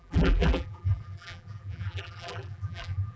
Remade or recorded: remade